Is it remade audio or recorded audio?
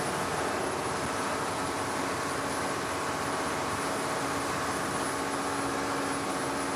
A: recorded